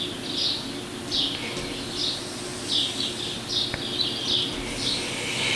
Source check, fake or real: real